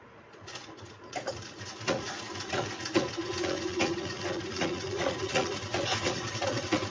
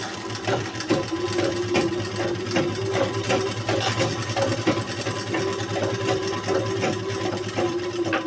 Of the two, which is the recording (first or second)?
second